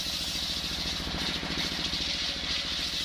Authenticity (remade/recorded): recorded